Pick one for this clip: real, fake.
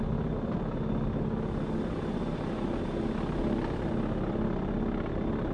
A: real